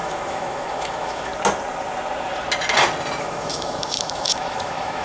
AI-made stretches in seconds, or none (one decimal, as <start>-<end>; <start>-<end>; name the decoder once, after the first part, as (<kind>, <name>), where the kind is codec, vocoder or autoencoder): 0.0-1.3 (autoencoder, DAC-VAE); 3.2-5.0